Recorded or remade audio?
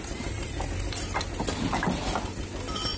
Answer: recorded